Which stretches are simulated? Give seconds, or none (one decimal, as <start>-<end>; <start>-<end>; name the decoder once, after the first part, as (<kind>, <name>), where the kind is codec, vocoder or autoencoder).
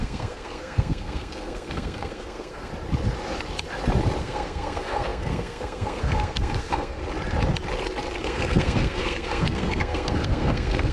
0.0-2.7 (codec, SNAC); 4.2-7.0; 8.2-10.9